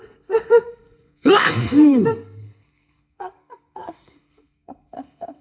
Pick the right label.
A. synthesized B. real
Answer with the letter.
A